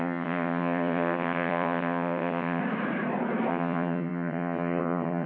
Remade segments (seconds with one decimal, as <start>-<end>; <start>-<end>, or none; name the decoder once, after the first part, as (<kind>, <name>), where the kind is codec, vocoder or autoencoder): 0.0-2.6 (vocoder, HiFi-GAN); 3.5-5.3